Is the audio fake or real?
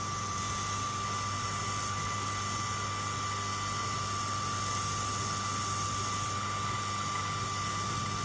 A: real